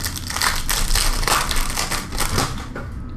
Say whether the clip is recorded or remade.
recorded